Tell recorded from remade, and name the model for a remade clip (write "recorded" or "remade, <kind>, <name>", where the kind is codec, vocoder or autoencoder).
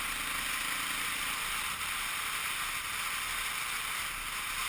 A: recorded